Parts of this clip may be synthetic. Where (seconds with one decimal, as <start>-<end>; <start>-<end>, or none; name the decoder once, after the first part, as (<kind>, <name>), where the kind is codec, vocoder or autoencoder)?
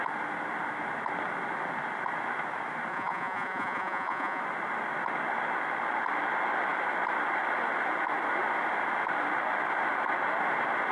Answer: 2.9-4.4 (vocoder, Vocos)